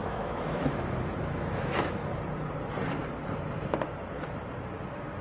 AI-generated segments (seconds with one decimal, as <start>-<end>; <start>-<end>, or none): 0.0-2.0